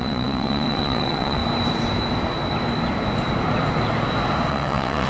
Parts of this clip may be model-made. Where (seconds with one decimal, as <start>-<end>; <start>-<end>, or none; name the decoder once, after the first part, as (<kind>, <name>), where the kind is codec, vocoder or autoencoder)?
0.0-1.4 (vocoder, WaveNeXt); 4.5-5.1